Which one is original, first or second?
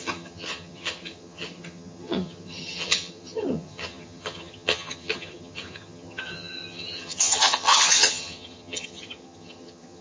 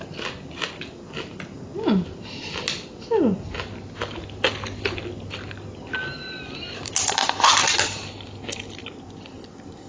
second